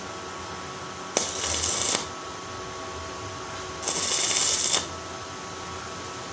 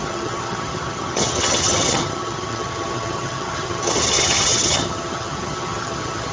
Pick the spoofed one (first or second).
second